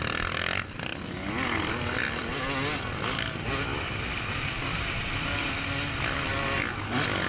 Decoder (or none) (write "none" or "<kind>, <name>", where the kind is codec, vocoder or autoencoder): none